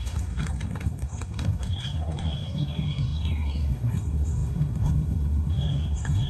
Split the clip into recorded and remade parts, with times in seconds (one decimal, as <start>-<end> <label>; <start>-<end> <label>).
0.0-6.3 remade